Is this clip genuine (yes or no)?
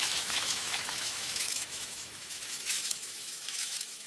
no